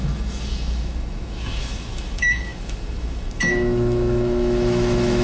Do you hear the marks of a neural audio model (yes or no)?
yes